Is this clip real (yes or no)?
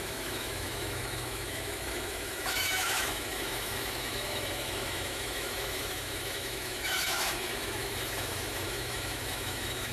no